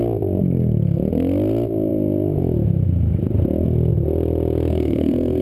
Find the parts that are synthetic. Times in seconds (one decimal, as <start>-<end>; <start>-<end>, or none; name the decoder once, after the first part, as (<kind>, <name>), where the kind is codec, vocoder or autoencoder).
4.7-5.4 (codec, SNAC)